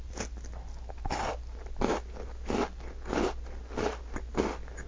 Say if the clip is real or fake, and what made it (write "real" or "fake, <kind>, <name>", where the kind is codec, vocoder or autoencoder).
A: real